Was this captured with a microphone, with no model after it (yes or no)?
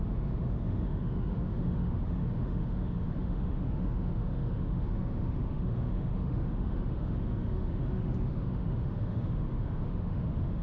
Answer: no